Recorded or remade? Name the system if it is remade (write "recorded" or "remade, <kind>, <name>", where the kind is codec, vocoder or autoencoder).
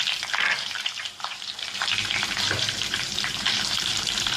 remade, vocoder, BigVGAN v2